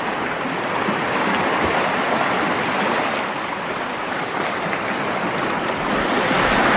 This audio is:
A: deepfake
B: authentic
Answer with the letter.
B